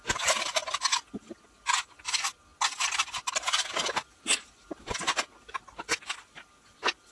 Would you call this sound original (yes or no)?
yes